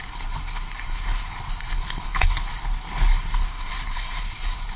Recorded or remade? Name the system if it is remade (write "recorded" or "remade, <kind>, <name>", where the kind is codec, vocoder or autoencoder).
remade, codec, HILCodec